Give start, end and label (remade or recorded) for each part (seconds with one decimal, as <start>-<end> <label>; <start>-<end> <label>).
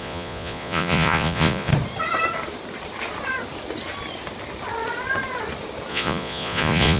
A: 0.0-1.7 remade; 1.7-5.9 recorded; 5.9-7.0 remade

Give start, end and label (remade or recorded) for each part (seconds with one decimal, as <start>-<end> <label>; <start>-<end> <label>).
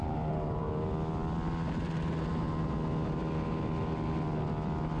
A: 0.0-0.6 remade; 0.6-5.0 recorded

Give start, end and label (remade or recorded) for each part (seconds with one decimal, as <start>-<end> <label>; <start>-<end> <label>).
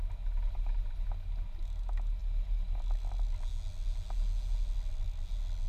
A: 0.0-5.7 recorded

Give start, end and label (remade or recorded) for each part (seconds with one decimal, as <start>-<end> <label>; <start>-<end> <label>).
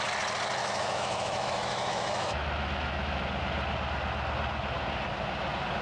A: 0.0-0.6 recorded; 0.6-3.2 remade; 3.2-5.8 recorded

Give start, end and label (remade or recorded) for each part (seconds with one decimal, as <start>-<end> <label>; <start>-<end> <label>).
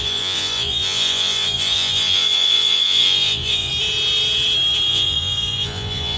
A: 0.0-3.7 remade; 3.7-4.9 recorded; 4.9-6.2 remade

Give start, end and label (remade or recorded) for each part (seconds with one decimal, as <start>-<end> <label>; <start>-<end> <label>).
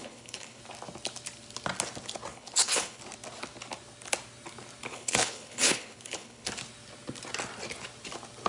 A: 0.0-0.6 remade; 0.6-2.3 recorded; 2.3-3.0 remade; 3.0-4.9 recorded; 4.9-6.5 remade; 6.5-8.5 recorded